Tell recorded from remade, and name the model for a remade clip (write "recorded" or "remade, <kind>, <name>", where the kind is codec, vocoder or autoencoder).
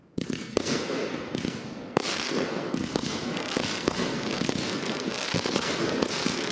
remade, codec, SNAC